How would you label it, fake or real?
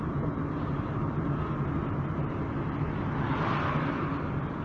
real